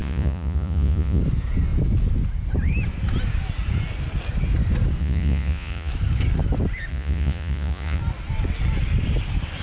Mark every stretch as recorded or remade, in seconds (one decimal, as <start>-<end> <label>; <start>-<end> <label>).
0.0-1.2 remade; 1.2-5.0 recorded; 5.0-5.9 remade; 5.9-6.9 recorded; 6.9-8.0 remade; 8.0-9.6 recorded